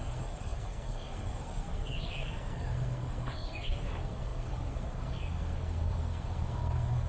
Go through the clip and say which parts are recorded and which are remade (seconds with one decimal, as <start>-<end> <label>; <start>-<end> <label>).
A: 0.0-7.1 remade